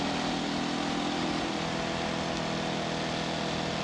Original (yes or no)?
yes